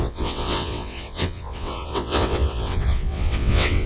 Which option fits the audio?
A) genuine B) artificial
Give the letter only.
B